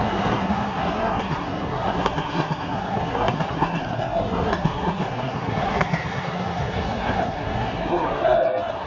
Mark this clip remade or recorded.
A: remade